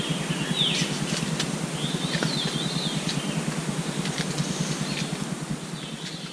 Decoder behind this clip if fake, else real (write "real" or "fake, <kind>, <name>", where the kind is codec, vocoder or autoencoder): real